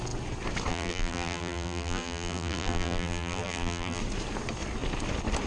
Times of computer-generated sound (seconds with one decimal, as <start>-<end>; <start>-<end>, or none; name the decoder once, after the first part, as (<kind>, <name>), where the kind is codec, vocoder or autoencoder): 0.7-4.0 (vocoder, BigVGAN v2)